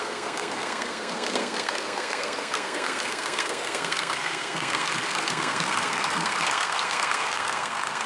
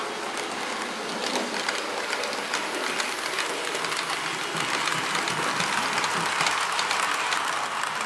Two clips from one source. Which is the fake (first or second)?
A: first